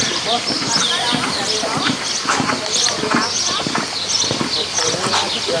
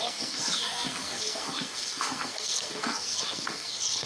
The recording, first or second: first